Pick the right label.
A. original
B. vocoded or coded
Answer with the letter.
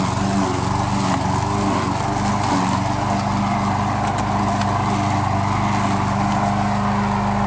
A